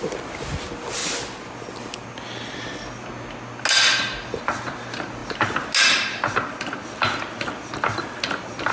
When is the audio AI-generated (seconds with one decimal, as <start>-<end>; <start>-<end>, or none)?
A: none